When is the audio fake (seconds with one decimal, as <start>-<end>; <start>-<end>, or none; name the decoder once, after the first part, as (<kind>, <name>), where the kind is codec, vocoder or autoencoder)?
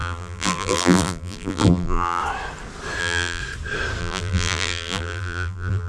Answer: 0.0-2.2 (vocoder, BigVGAN v2); 3.0-3.4; 4.0-5.9